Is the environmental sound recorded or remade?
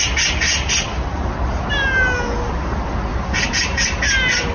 recorded